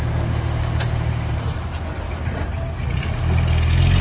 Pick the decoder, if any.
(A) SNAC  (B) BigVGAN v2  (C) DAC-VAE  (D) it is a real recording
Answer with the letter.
D